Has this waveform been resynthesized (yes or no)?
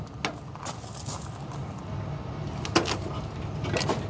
no